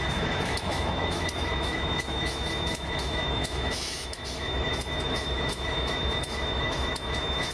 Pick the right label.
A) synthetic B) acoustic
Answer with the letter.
A